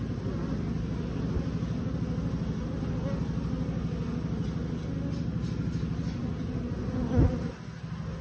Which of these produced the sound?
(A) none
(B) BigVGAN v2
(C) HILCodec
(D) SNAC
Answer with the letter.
A